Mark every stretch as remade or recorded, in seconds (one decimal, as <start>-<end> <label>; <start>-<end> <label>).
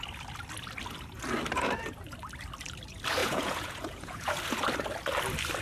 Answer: 0.0-3.2 recorded; 3.2-4.3 remade; 4.3-5.6 recorded